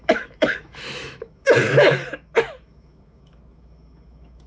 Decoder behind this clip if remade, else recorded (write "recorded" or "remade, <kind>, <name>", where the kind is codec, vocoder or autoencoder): remade, autoencoder, DAC-VAE